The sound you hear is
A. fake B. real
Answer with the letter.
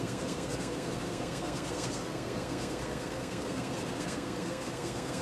A